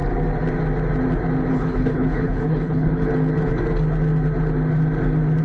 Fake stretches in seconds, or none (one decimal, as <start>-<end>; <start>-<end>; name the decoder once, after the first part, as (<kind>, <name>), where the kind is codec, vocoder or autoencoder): 1.5-3.1 (codec, HILCodec)